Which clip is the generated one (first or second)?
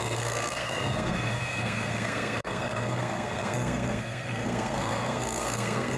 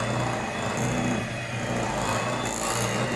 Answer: first